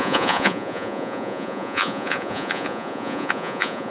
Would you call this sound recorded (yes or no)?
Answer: no